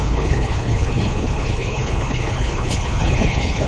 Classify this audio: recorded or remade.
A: remade